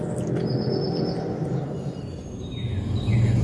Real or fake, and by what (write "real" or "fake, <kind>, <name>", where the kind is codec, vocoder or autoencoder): real